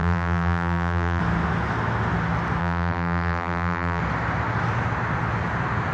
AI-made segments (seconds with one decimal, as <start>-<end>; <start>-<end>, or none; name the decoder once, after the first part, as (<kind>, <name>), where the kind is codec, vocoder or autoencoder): 0.0-1.2 (vocoder, BigVGAN v2); 2.6-4.0